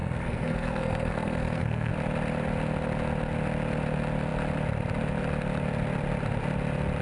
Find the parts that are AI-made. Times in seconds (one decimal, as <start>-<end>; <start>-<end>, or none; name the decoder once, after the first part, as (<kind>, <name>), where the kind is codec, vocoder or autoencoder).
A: 0.0-1.9 (codec, SNAC)